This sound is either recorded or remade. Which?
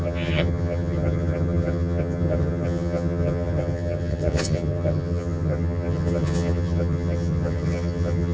remade